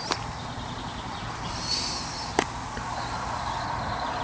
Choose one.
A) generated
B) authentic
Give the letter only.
B